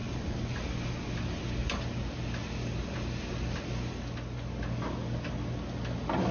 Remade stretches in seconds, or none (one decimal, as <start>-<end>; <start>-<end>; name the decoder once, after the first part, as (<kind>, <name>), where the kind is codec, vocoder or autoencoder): none